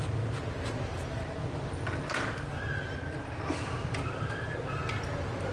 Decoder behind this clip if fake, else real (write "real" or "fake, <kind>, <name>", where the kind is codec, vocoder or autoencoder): real